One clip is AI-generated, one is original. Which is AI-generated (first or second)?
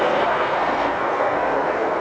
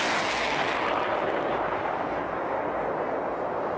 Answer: first